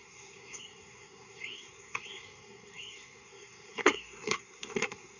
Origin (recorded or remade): remade